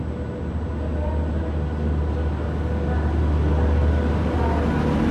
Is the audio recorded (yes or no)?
yes